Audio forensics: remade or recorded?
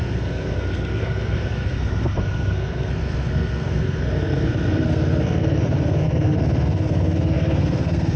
remade